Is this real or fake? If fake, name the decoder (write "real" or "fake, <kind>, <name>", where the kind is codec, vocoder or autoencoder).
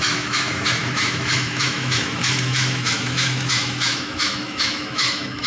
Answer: fake, autoencoder, DAC-VAE